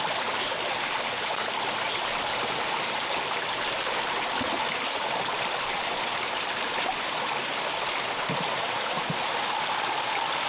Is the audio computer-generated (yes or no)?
no